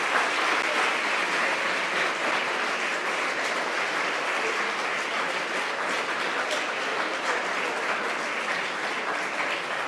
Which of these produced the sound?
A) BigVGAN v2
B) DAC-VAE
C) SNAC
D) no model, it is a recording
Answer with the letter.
D